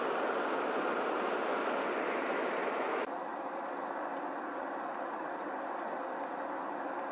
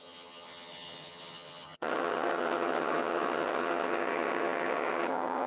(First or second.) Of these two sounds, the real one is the first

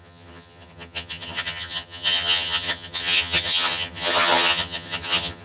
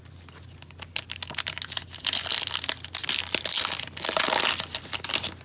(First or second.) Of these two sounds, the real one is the second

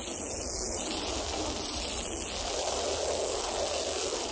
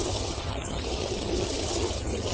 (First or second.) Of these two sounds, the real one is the first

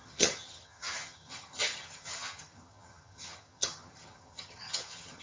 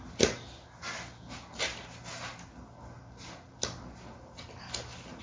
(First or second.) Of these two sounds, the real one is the second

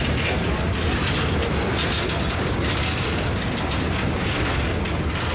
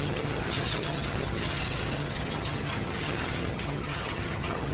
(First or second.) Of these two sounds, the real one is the first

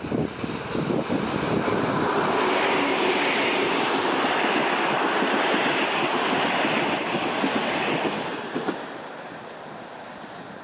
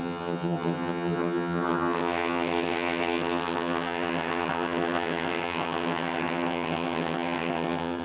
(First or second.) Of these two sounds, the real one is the first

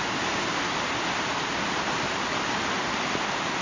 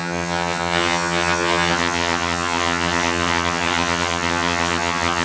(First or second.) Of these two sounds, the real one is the first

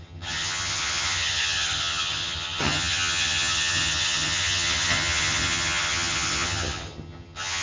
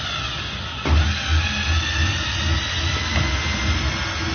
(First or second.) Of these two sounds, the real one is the second